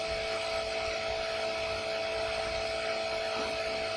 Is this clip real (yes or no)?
yes